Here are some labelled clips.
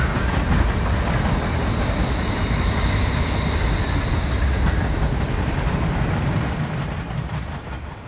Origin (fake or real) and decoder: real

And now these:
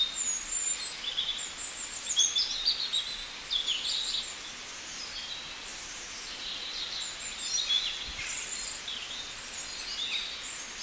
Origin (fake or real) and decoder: real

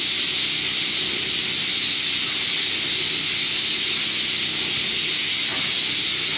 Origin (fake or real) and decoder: real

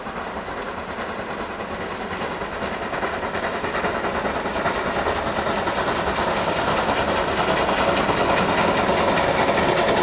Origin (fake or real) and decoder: real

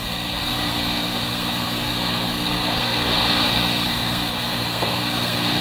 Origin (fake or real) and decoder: fake, codec, SNAC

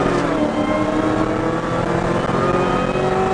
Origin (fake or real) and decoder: real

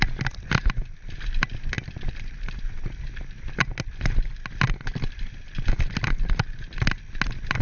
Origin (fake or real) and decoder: real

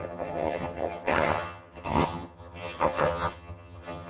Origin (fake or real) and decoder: fake, vocoder, HiFi-GAN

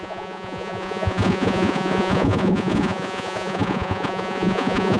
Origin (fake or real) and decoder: fake, vocoder, Vocos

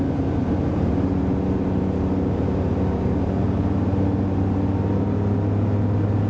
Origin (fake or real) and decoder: real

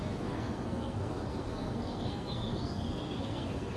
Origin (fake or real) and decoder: fake, codec, SNAC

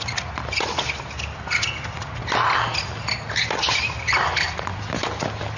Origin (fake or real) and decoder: real